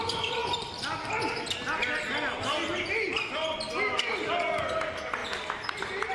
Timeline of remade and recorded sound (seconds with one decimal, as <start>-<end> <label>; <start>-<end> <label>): 0.0-6.1 recorded